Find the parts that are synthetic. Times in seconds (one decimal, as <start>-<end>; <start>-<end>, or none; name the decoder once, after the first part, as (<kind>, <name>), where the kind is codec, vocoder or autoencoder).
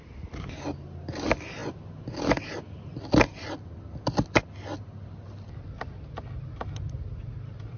none